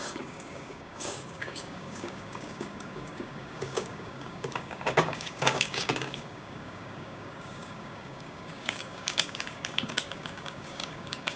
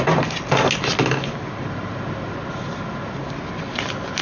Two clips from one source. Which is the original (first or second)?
second